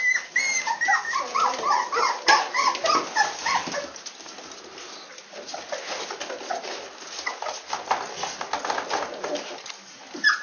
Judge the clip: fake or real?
real